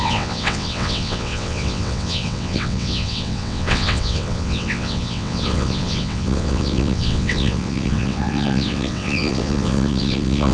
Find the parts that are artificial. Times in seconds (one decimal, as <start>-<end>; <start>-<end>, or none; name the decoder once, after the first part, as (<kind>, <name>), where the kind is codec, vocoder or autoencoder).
0.0-10.5 (vocoder, WaveNeXt)